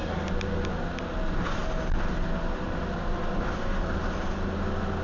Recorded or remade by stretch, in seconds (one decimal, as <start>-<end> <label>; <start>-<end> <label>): 0.0-5.0 recorded